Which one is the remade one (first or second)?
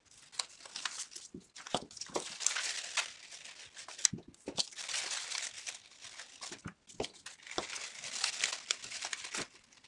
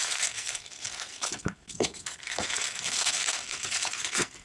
second